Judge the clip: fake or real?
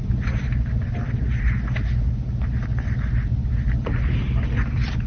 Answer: real